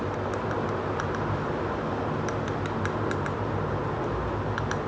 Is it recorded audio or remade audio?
recorded